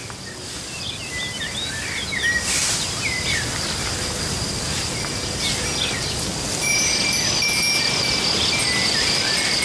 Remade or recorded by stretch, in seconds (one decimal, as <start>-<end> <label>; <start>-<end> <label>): 0.0-9.6 recorded